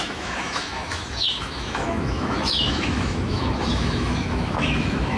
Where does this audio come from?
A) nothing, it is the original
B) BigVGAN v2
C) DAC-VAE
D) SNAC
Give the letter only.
C